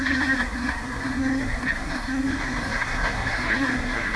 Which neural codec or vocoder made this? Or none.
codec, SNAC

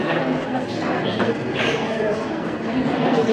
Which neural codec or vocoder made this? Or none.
codec, SNAC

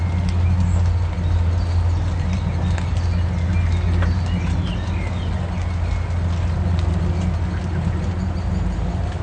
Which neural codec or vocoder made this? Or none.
none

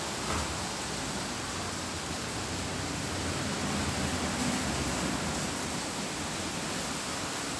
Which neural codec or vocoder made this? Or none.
none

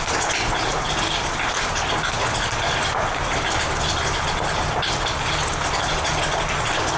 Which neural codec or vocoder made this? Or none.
none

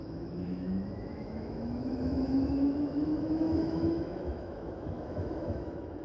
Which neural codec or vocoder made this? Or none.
autoencoder, DAC-VAE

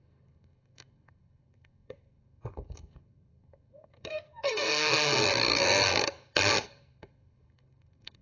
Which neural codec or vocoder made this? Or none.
codec, SNAC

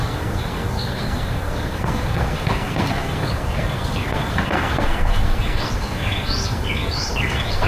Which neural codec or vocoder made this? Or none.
codec, SNAC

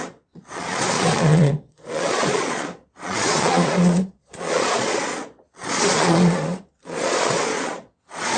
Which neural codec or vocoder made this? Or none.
vocoder, Vocos